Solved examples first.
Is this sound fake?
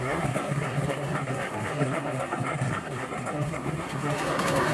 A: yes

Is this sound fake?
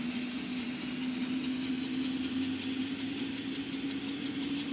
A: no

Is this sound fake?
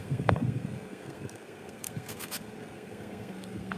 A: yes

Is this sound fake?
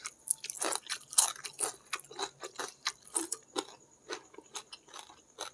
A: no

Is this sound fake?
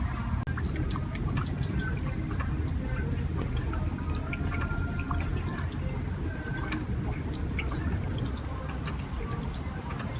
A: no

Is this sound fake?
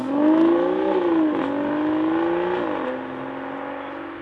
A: no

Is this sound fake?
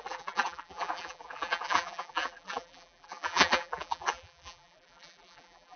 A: yes